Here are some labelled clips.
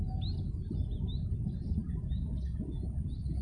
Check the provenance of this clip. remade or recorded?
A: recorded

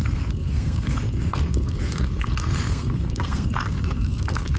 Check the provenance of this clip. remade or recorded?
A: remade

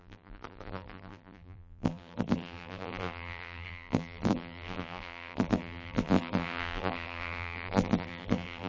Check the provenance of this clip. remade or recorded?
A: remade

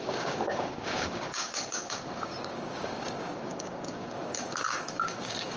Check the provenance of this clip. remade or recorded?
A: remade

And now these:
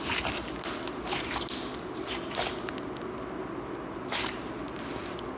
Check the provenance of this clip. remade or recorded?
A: recorded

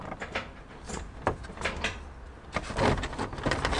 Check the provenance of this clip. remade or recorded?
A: recorded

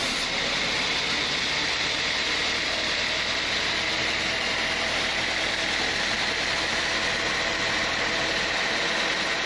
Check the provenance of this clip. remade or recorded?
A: recorded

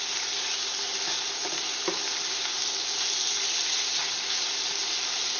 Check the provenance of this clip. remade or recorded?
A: recorded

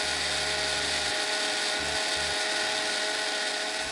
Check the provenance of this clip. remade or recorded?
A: recorded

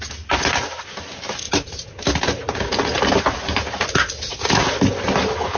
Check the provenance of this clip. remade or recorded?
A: recorded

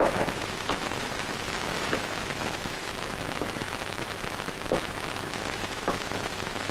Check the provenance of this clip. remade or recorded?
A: remade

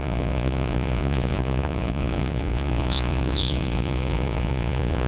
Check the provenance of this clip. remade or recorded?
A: remade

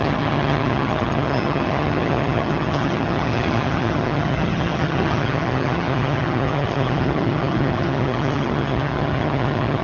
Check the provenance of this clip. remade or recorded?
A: remade